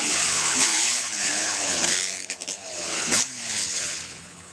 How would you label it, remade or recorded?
remade